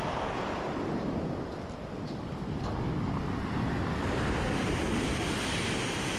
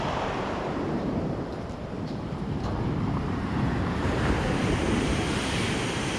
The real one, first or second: first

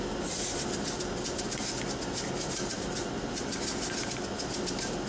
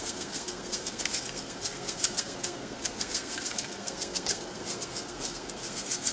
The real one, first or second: first